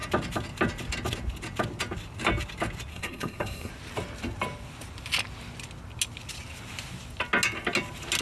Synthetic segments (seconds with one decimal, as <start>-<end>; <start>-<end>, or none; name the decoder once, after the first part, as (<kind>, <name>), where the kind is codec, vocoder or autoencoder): 2.9-3.7 (codec, SNAC)